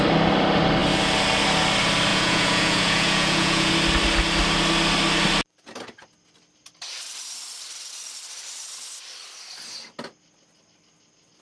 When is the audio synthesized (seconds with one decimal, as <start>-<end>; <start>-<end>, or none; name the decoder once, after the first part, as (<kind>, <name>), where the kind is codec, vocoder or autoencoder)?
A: 2.1-3.7 (vocoder, Vocos)